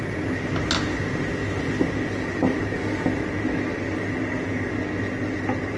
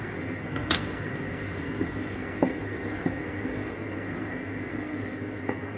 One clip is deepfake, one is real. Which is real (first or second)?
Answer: first